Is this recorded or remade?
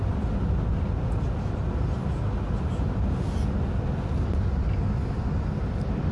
recorded